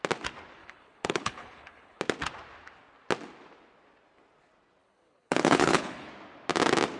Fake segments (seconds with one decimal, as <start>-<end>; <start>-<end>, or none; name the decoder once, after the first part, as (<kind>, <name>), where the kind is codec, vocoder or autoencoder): 0.6-2.0 (codec, HILCodec); 4.8-6.1